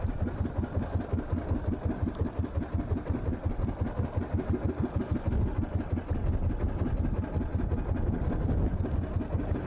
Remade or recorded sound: recorded